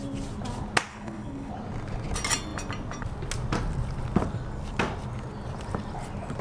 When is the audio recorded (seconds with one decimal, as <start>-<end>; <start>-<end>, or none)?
0.0-0.9; 1.5-6.4